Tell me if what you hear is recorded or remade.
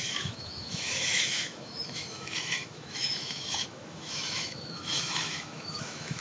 remade